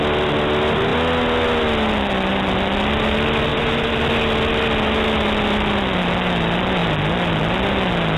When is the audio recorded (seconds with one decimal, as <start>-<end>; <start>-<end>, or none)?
0.0-3.5; 4.0-8.2